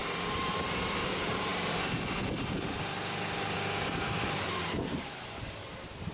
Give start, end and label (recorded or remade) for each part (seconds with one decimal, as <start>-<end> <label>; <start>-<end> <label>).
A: 0.0-6.1 remade